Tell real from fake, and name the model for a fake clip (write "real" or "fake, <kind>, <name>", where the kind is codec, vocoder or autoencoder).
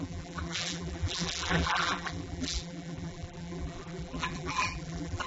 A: fake, vocoder, BigVGAN v2